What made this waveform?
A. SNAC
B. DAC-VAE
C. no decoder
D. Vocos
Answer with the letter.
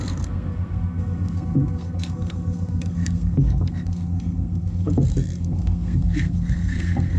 A